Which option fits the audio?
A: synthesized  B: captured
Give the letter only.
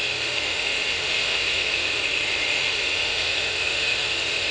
A